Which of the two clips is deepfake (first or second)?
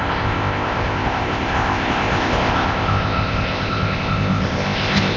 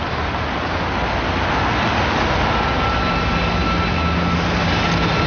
first